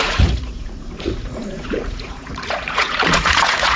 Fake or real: fake